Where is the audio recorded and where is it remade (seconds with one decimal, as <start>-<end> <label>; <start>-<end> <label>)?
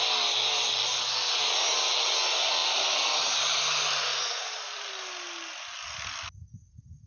0.0-2.6 recorded; 2.6-3.6 remade; 3.6-4.1 recorded; 4.1-4.9 remade; 4.9-7.1 recorded